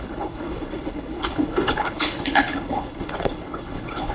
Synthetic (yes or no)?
yes